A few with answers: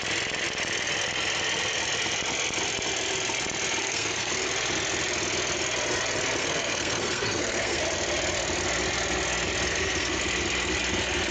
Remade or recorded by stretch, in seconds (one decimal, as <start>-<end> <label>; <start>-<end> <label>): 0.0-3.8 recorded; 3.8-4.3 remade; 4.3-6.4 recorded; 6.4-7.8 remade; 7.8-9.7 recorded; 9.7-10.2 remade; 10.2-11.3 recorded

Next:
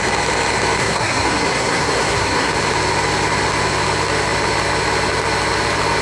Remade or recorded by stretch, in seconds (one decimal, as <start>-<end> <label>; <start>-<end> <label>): 0.0-0.8 recorded; 0.8-2.5 remade; 2.5-6.0 recorded

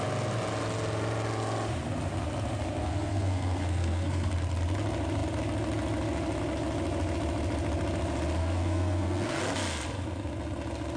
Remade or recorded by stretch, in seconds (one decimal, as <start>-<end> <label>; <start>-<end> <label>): 0.0-2.8 recorded; 2.8-4.3 remade; 4.3-8.4 recorded; 8.4-9.4 remade; 9.4-11.0 recorded

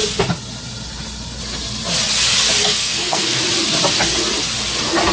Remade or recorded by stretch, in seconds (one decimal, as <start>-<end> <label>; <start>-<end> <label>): 0.0-2.6 recorded; 2.6-3.4 remade; 3.4-5.1 recorded